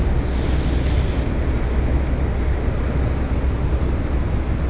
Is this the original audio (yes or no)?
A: yes